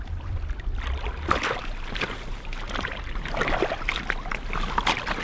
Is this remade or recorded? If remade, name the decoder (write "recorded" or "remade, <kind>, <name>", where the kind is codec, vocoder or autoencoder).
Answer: recorded